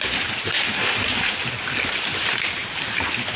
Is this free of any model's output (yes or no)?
yes